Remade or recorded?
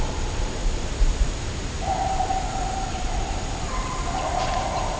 remade